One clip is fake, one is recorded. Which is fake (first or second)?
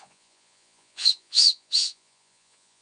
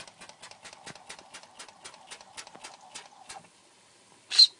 first